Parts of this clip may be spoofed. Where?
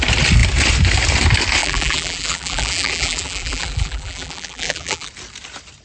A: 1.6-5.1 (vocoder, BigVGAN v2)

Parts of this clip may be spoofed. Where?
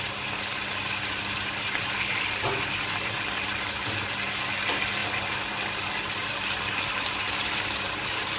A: none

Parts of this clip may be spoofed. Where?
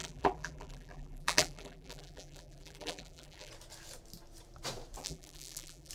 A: 0.0-3.5 (vocoder, BigVGAN v2); 5.0-5.9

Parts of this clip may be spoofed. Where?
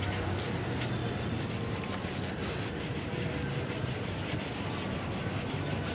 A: 1.0-4.5 (vocoder, BigVGAN v2)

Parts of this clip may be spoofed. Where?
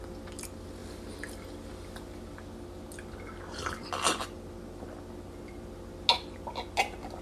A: none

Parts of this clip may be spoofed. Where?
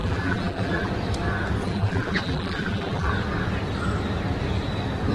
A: 0.0-0.9 (vocoder, BigVGAN v2); 1.6-3.1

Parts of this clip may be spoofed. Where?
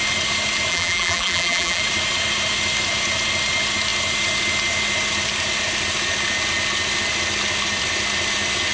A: 0.7-1.8 (vocoder, BigVGAN v2)